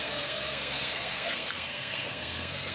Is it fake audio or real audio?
fake